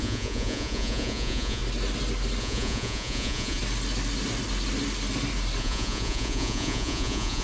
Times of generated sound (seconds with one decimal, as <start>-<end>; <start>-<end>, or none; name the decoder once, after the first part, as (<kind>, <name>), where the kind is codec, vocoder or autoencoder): 0.0-1.6 (vocoder, Vocos); 2.4-3.6; 5.6-7.4